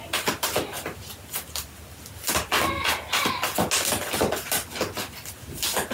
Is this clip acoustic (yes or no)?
yes